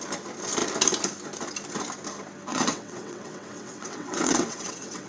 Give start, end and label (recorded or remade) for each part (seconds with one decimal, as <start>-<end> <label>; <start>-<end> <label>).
0.0-2.5 recorded; 2.5-5.1 remade